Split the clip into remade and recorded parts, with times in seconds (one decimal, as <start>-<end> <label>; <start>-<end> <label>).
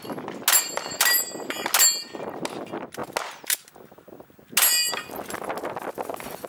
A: 0.0-6.5 recorded